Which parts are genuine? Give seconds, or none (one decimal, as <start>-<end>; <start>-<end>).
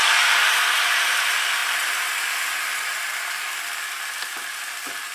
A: 0.0-5.1